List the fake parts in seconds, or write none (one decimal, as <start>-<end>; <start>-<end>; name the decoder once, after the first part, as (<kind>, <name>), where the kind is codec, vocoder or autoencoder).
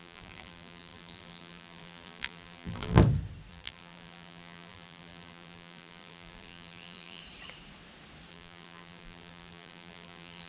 0.0-3.0 (vocoder, BigVGAN v2); 3.5-7.2; 8.3-10.5